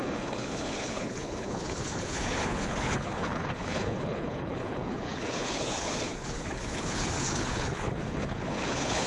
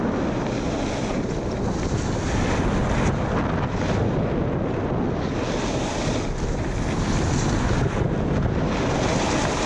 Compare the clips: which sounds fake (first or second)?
first